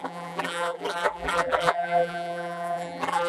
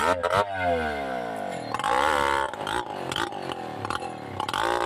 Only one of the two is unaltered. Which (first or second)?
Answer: second